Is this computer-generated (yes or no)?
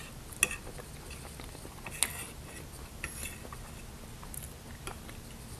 no